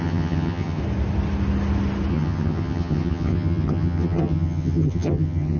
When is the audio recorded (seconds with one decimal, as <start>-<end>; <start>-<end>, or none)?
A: 0.8-2.1